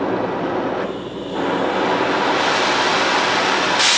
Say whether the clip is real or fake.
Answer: real